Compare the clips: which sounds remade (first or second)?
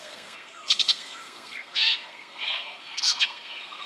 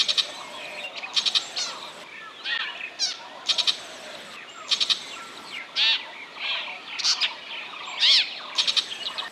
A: first